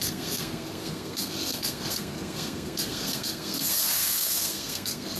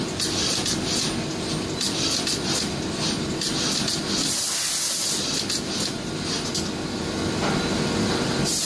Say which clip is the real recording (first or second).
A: second